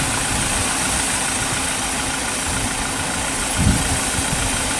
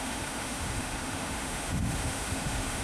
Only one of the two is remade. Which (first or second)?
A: second